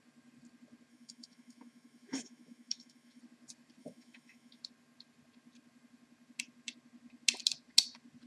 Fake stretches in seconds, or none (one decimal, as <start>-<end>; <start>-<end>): 0.9-3.2; 3.8-4.6